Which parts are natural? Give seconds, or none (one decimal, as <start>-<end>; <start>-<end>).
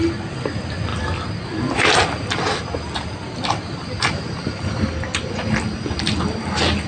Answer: 0.0-6.9